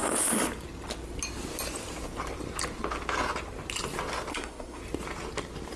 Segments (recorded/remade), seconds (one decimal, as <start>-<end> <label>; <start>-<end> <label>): 0.0-4.3 recorded; 4.3-4.8 remade; 4.8-5.8 recorded